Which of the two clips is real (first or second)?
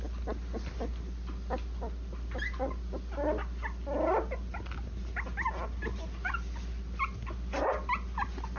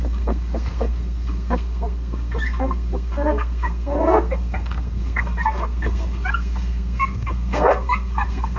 first